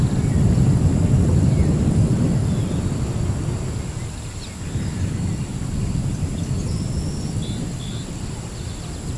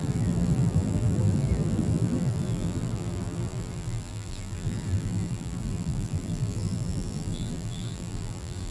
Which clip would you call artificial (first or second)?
second